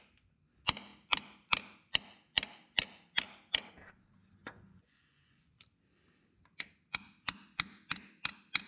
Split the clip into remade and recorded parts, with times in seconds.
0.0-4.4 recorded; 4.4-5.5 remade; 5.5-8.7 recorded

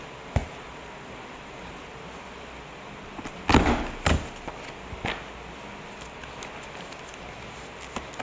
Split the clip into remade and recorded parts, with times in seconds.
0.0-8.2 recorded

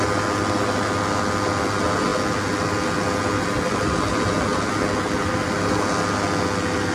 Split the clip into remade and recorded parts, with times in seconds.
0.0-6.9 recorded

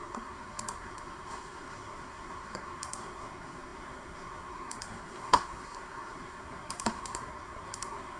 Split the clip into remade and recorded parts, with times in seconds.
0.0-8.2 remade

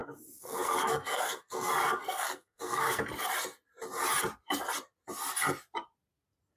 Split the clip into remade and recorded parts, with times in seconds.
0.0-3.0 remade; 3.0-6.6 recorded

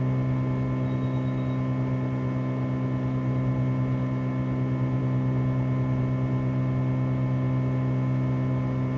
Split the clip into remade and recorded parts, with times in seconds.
0.0-9.0 recorded